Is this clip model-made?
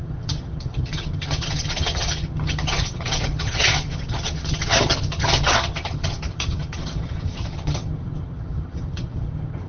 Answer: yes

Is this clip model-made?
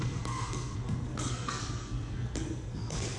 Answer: yes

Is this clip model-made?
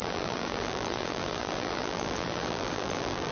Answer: yes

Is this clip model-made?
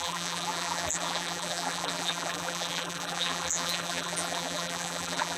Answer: yes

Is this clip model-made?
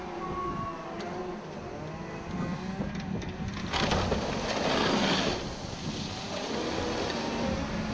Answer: no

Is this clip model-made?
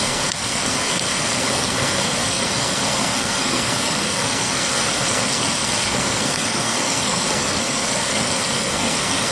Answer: yes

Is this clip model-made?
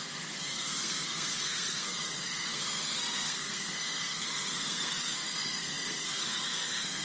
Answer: yes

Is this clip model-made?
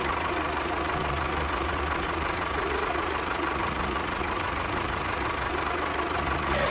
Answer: yes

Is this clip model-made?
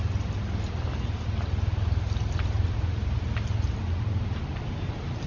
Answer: no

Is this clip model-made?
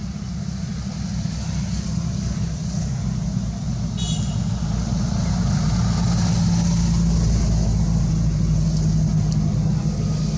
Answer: no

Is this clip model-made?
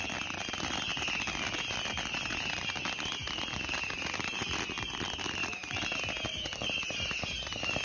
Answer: no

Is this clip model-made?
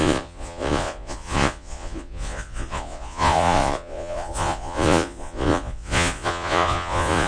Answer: yes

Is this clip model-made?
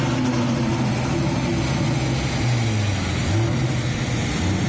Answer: no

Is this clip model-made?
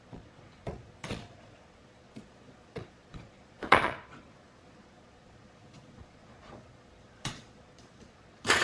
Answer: yes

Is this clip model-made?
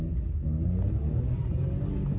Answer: no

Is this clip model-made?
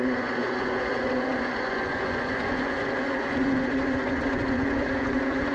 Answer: yes